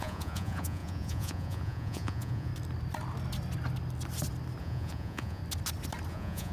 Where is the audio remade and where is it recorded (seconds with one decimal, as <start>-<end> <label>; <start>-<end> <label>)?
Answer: 0.0-2.5 remade; 2.5-4.6 recorded; 4.6-5.4 remade; 5.4-6.1 recorded; 6.1-6.5 remade